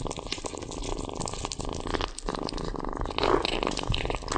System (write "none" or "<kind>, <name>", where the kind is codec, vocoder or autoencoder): none